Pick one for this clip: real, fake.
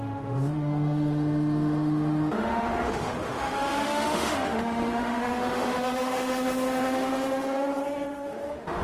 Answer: fake